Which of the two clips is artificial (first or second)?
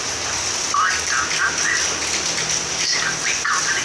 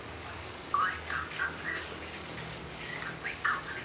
second